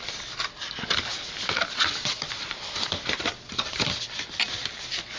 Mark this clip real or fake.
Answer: real